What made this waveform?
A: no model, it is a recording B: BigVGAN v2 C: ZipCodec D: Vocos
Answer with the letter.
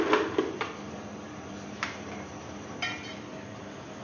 A